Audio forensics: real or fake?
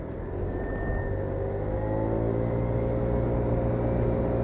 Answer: real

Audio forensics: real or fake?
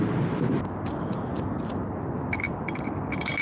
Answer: real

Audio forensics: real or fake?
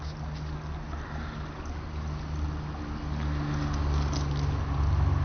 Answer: real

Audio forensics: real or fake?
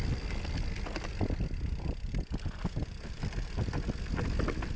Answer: real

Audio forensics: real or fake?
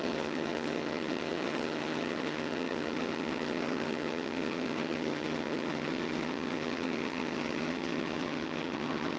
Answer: fake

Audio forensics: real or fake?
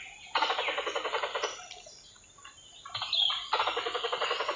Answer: real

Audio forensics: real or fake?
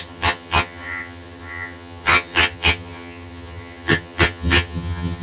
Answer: fake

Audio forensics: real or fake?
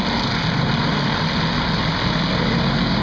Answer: real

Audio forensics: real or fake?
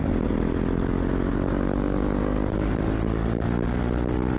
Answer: real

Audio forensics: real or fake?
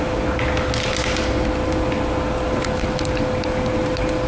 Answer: real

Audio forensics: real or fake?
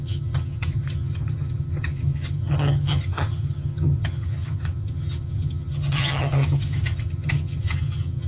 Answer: fake